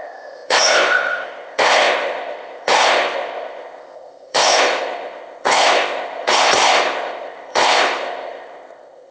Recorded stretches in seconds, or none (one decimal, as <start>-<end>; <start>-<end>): none